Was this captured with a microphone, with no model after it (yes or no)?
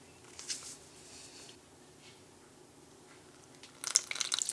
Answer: yes